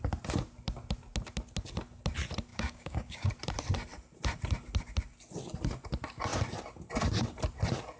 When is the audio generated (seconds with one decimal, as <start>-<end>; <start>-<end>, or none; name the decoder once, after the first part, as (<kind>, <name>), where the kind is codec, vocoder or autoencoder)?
2.5-3.3 (codec, DAC)